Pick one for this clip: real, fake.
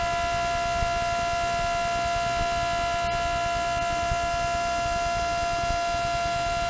real